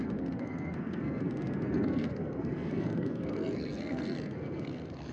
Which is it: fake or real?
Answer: fake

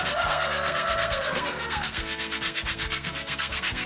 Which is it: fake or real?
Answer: fake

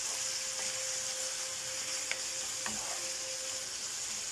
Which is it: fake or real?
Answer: real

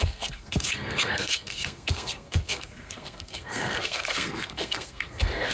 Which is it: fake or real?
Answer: fake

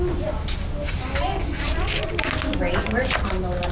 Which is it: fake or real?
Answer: real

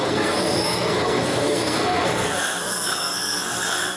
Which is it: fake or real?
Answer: fake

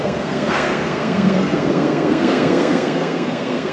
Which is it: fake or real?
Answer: fake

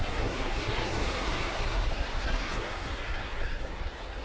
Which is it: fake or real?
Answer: fake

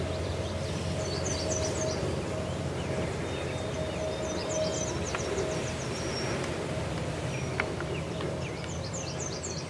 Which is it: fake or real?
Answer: real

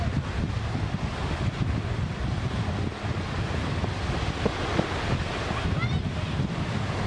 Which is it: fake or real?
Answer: real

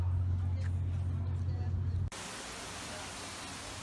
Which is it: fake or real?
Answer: real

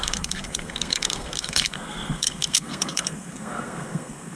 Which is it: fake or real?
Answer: fake